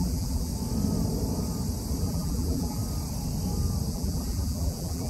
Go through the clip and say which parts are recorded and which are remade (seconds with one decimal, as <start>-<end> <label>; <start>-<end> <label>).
0.0-0.5 remade; 0.5-2.0 recorded; 2.0-2.8 remade; 2.8-3.9 recorded; 3.9-5.1 remade